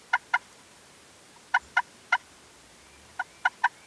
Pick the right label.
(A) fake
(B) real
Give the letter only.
B